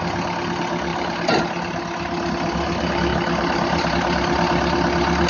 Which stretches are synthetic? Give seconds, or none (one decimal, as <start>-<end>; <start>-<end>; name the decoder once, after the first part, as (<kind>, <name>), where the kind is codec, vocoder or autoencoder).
0.9-1.4 (vocoder, BigVGAN v2)